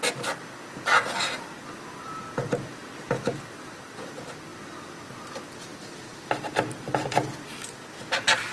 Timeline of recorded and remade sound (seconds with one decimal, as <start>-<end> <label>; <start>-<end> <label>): 0.0-2.8 recorded; 2.8-3.8 remade; 3.8-8.5 recorded